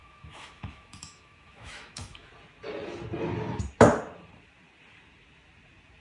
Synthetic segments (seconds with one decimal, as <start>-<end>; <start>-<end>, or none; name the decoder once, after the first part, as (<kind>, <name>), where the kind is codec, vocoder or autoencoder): 0.0-2.3 (autoencoder, DAC-VAE)